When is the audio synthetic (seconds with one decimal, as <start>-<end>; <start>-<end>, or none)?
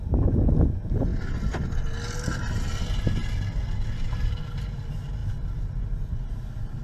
none